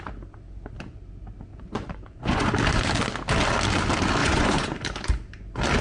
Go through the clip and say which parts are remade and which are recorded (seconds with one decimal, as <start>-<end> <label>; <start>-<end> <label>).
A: 0.0-1.5 recorded; 1.5-2.5 remade; 2.5-4.2 recorded; 4.2-4.8 remade; 4.8-5.8 recorded